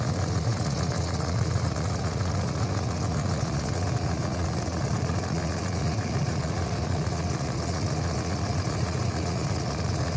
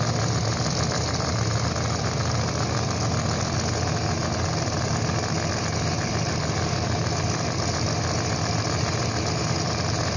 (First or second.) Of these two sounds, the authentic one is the second